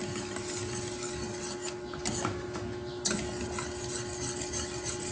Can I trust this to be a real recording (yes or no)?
yes